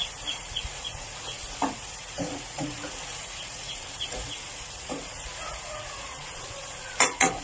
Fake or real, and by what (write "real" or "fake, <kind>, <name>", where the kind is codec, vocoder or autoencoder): fake, vocoder, Vocos